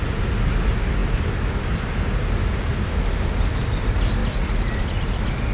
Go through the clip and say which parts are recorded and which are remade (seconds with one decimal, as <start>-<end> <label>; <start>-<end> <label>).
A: 0.0-5.5 recorded

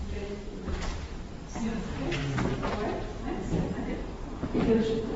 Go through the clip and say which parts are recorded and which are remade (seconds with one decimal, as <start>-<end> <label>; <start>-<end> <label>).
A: 0.0-0.6 recorded; 0.6-1.8 remade; 1.8-5.2 recorded